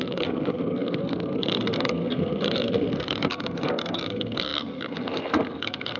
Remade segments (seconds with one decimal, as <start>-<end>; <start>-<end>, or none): 0.0-6.0